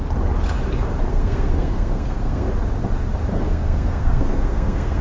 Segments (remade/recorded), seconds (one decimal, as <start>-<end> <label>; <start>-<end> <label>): 0.0-1.1 recorded; 1.1-2.5 remade; 2.5-3.3 recorded; 3.3-5.0 remade